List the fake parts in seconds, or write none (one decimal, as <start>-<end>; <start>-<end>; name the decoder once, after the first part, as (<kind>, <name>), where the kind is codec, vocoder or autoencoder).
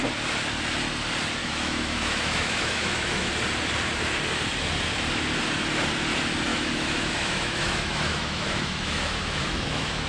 1.4-3.3 (autoencoder, DAC-VAE); 6.5-10.1